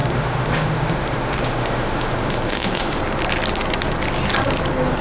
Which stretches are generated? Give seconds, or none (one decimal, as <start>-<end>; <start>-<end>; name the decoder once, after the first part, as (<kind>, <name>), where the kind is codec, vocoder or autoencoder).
0.0-3.0 (autoencoder, DAC-VAE)